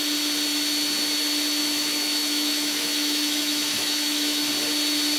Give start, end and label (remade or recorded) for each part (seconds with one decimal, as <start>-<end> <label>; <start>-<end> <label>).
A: 0.0-1.6 recorded; 1.6-4.5 remade; 4.5-5.2 recorded